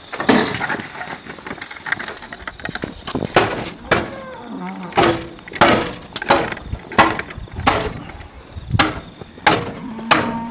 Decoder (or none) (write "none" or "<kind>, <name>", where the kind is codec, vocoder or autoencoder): none